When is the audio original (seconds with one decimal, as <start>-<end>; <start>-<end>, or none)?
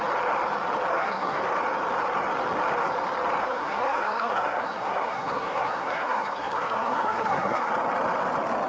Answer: 0.0-0.9; 1.4-3.4; 7.7-8.7